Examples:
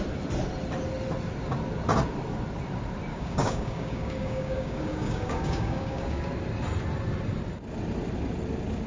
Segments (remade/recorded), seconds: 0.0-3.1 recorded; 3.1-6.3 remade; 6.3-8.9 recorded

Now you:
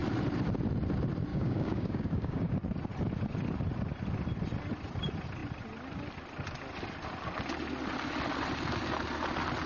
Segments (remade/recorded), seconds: 0.0-1.3 recorded; 1.3-2.5 remade; 2.5-9.7 recorded

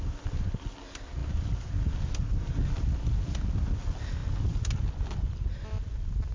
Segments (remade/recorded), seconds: 0.0-6.3 recorded

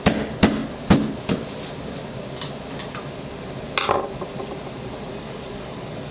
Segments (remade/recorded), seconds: 0.0-5.1 recorded; 5.1-6.1 remade

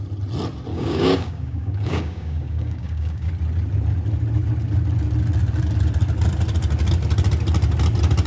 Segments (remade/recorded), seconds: 0.0-0.7 recorded; 0.7-3.3 remade; 3.3-8.3 recorded

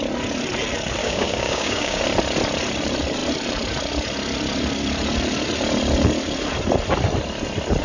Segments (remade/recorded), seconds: 0.0-1.0 recorded; 1.0-2.0 remade; 2.0-7.8 recorded

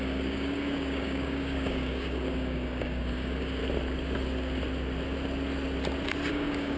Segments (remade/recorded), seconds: 0.0-3.6 remade; 3.6-6.3 recorded; 6.3-6.8 remade